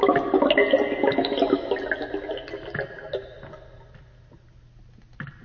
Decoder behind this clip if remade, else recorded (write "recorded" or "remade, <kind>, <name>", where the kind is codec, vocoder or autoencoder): recorded